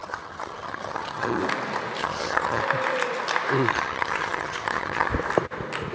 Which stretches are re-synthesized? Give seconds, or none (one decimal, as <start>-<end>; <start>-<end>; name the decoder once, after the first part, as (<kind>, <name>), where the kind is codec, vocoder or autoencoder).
0.0-1.4 (vocoder, HiFi-GAN); 2.0-2.6; 3.7-5.1